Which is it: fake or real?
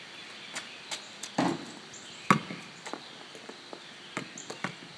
real